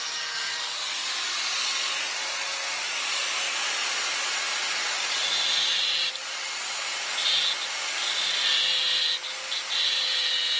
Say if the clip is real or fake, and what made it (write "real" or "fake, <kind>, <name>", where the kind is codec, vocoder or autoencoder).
real